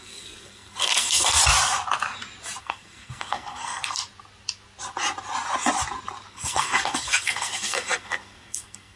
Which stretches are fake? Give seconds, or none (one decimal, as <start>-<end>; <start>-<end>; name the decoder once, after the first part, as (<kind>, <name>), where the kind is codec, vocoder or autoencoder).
0.0-1.4 (codec, SNAC); 2.6-4.0; 6.3-9.0